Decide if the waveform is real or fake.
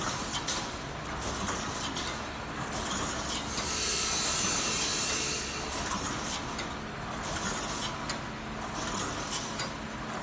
real